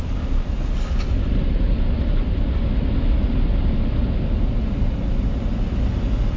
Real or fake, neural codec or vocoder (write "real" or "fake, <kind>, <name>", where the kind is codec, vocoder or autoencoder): real